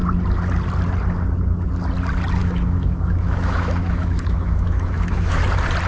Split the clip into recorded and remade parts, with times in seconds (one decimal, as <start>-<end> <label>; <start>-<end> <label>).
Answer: 0.0-2.4 recorded; 2.4-5.4 remade; 5.4-5.9 recorded